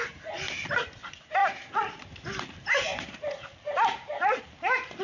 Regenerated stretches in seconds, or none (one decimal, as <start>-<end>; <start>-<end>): none